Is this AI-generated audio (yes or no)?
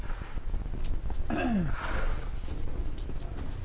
no